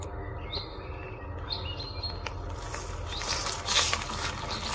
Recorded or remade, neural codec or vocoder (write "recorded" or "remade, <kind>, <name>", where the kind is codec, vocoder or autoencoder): recorded